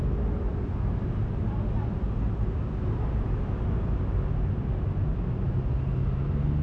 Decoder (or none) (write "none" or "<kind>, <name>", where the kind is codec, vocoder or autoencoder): none